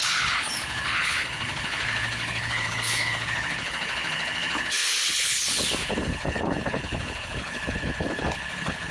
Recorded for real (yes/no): no